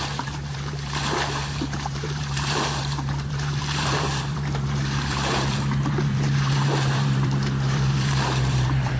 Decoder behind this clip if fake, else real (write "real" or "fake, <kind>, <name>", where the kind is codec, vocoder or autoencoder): fake, vocoder, BigVGAN v2